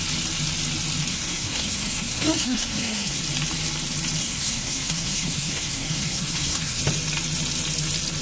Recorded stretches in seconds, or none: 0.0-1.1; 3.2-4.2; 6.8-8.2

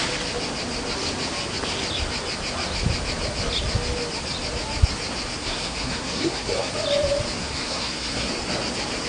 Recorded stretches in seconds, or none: 0.0-5.4; 6.7-7.4; 8.3-9.1

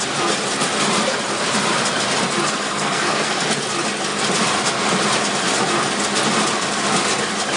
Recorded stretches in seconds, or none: 0.0-2.5; 3.5-7.6

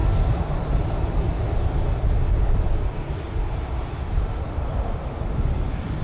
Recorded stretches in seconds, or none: 0.0-6.0

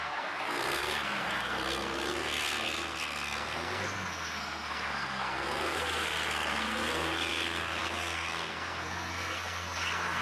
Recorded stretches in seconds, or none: none

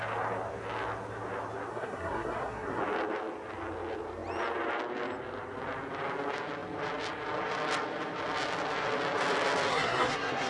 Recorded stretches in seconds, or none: 0.0-1.7; 2.8-9.7